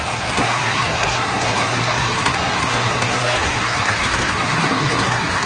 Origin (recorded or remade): remade